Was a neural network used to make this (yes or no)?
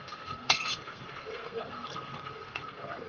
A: yes